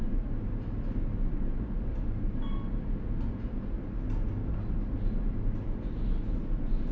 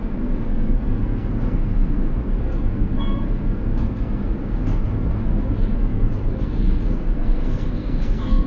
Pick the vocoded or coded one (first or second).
second